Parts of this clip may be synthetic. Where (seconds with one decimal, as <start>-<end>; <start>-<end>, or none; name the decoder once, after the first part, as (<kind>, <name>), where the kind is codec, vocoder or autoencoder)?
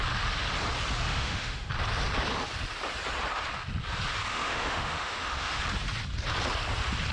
1.1-1.7 (autoencoder, DAC-VAE); 4.3-5.6